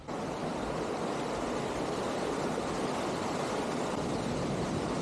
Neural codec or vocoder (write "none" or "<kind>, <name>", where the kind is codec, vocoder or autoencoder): vocoder, BigVGAN v2